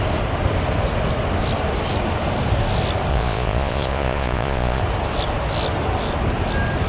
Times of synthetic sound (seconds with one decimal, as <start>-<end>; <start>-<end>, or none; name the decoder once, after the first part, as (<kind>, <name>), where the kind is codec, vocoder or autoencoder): 3.1-4.8 (vocoder, Vocos)